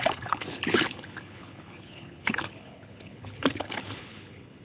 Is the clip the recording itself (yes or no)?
no